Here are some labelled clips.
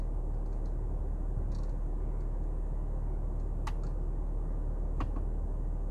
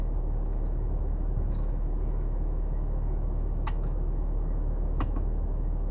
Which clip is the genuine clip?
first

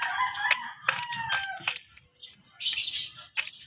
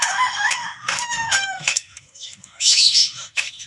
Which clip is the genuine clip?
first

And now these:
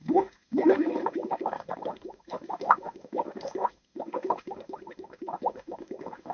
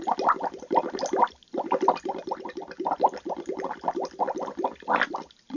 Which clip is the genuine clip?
second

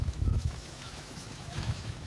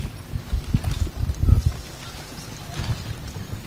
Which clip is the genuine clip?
second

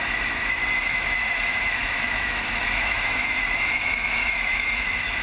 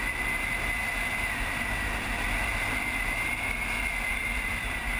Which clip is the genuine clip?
second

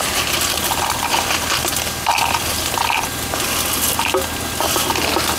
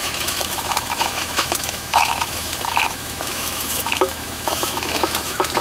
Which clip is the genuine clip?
first